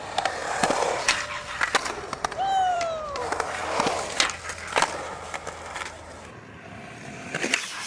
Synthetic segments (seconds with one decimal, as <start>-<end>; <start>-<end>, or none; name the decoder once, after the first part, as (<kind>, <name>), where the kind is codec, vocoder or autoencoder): 0.0-3.6 (vocoder, BigVGAN v2); 7.2-7.9